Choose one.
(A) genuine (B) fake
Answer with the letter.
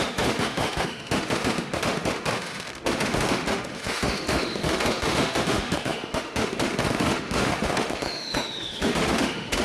B